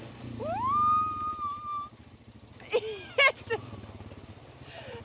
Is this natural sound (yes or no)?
yes